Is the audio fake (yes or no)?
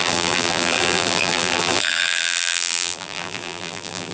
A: yes